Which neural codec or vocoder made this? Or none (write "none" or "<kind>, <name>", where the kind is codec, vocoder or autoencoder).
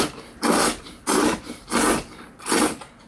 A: none